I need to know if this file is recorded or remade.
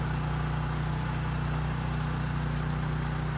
recorded